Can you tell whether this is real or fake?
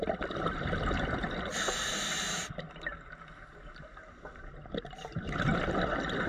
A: real